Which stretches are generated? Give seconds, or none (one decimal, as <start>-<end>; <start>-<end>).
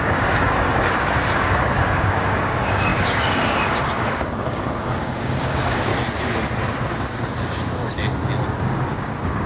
0.0-5.9; 8.6-9.5